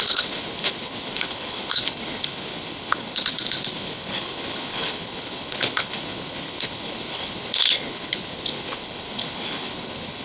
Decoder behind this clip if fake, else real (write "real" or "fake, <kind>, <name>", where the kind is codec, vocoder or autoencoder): fake, codec, HILCodec